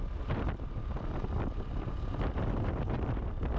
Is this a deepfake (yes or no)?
no